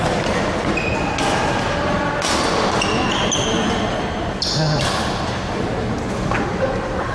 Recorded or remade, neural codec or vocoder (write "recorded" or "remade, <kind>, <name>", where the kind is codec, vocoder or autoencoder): recorded